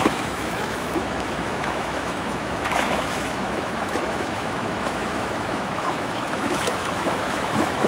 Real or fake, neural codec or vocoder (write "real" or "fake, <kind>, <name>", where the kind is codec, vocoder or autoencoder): fake, autoencoder, DAC-VAE